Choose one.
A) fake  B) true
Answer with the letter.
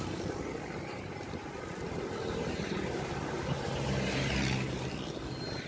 B